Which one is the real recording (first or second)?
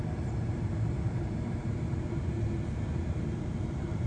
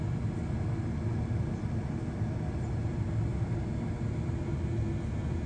second